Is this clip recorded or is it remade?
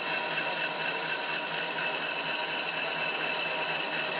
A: recorded